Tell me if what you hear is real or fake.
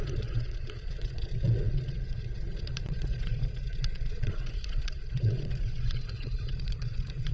fake